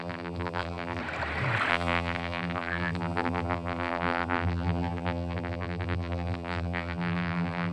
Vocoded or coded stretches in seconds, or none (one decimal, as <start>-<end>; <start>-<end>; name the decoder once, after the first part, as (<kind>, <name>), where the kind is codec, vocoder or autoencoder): 0.0-1.0 (vocoder, BigVGAN v2); 1.7-7.7